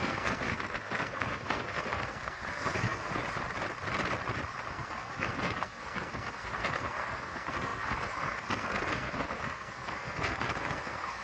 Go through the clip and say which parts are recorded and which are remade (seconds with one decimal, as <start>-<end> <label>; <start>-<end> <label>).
0.0-3.2 remade; 3.2-4.7 recorded; 4.7-11.2 remade